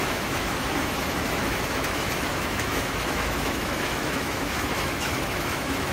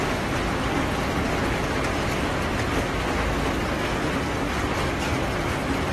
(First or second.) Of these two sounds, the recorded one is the second